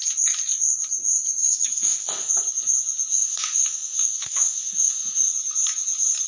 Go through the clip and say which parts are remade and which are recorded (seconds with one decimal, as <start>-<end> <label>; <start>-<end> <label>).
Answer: 0.0-1.4 recorded; 1.4-2.3 remade; 2.3-3.1 recorded; 3.1-5.3 remade; 5.3-6.3 recorded